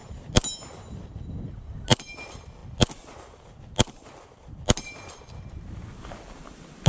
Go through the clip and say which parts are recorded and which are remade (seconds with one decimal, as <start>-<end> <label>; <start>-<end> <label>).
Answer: 0.0-6.9 recorded